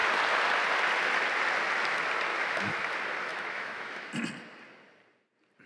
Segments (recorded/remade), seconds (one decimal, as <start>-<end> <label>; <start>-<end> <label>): 0.0-2.3 recorded; 2.3-2.9 remade; 2.9-3.3 recorded; 3.3-4.1 remade; 4.1-5.7 recorded